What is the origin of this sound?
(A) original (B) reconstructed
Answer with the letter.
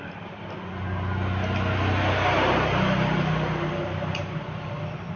A